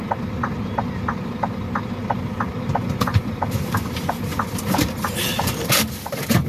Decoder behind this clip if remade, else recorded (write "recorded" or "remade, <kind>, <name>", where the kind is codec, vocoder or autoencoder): remade, vocoder, BigVGAN v2